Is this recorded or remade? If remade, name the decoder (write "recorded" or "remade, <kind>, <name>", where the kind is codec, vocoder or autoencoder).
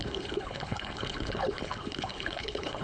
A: remade, codec, HILCodec